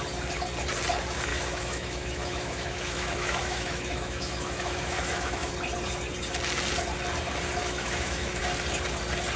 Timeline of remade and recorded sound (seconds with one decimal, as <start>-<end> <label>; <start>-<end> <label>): 0.0-1.3 recorded; 1.3-5.5 remade; 5.5-7.6 recorded; 7.6-8.4 remade; 8.4-9.4 recorded